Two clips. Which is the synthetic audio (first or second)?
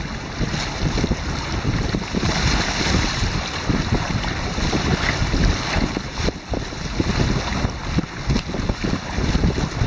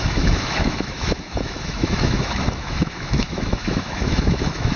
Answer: second